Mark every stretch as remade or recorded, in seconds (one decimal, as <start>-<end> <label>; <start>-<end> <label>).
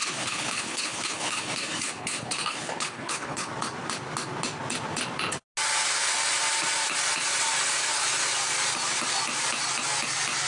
0.0-3.5 remade; 3.5-10.5 recorded